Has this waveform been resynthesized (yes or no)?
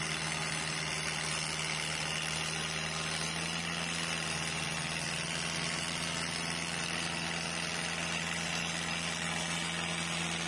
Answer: no